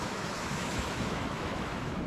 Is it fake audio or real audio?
fake